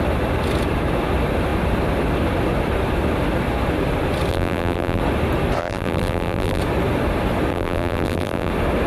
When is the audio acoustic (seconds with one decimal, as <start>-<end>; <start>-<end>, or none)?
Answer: 0.0-4.3; 5.0-5.6; 6.6-7.5; 8.5-8.9